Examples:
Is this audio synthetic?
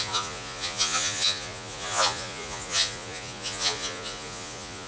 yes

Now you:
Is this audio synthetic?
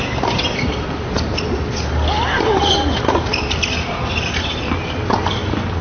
no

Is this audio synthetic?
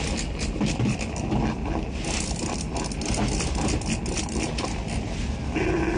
no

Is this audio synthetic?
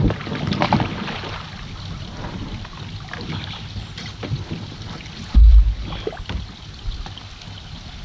no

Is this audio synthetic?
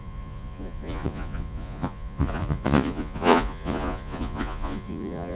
yes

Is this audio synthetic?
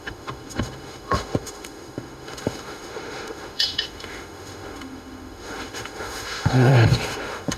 yes